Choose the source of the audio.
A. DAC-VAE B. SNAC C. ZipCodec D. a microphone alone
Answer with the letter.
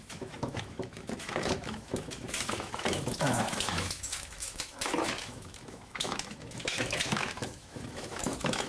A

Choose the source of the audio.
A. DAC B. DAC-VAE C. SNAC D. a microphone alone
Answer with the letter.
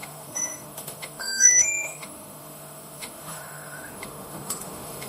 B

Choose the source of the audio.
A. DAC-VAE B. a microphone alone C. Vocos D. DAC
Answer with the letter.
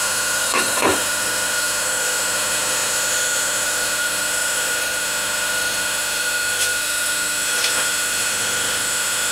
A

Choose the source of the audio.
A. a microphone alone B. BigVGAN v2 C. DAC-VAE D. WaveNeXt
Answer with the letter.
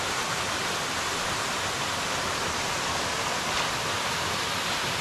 A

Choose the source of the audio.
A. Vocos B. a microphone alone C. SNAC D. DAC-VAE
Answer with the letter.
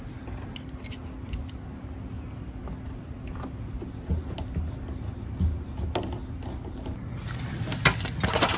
B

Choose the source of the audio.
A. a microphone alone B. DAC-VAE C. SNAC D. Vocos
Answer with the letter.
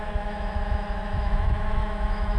B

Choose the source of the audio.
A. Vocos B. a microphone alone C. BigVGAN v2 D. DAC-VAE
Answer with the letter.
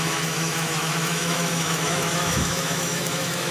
D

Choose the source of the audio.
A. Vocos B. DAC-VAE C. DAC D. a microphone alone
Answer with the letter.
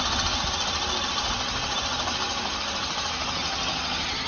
D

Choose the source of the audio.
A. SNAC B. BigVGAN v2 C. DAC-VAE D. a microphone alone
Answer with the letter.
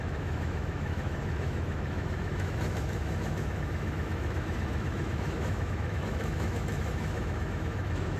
C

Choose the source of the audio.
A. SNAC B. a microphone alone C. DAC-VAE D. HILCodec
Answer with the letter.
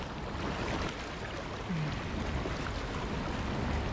B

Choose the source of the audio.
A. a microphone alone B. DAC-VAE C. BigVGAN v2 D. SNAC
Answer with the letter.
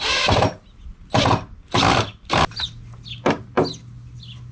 A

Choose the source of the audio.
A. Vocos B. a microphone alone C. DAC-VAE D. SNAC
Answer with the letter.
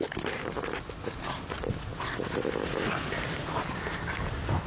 B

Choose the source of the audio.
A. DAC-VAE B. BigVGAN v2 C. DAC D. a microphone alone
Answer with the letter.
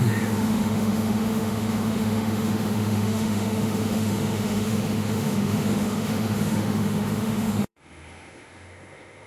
A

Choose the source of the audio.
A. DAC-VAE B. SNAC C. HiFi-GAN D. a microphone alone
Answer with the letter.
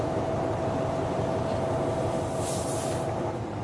D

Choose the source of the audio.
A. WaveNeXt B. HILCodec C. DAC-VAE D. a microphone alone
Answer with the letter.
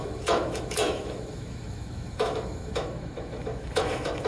C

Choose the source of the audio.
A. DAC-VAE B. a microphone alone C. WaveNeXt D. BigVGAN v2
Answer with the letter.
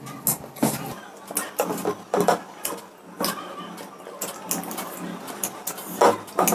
B